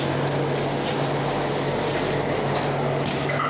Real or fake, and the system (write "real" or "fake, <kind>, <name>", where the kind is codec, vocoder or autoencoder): real